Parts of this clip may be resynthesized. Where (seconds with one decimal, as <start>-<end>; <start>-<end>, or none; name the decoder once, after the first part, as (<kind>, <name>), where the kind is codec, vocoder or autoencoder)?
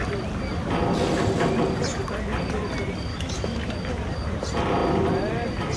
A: 3.1-3.7 (autoencoder, DAC-VAE)